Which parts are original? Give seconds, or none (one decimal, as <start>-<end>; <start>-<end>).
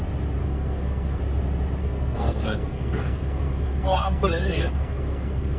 0.0-0.4; 1.2-1.8